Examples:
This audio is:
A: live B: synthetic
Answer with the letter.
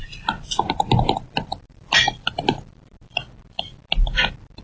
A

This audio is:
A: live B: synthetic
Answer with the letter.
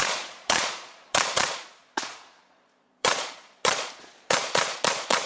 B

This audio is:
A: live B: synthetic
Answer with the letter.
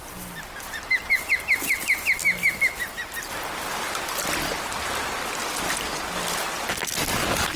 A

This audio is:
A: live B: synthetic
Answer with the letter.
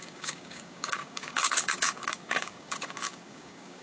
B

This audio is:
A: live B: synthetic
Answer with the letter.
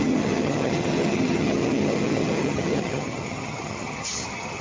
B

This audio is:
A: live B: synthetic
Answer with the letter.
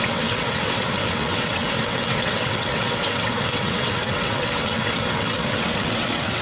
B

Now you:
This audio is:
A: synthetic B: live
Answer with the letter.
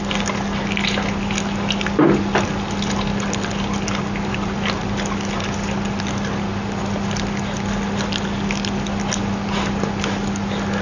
B